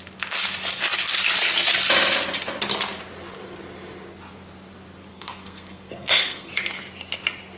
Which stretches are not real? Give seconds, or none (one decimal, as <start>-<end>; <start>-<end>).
5.1-6.5